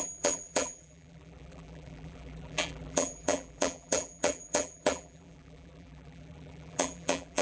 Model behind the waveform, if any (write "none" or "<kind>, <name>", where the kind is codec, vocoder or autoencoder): vocoder, BigVGAN v2